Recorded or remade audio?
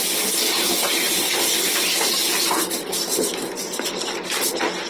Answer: recorded